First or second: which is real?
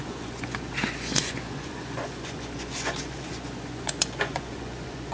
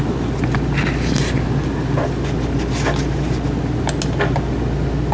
second